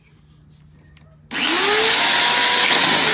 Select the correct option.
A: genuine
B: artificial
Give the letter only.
A